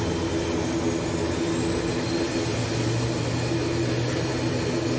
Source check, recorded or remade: recorded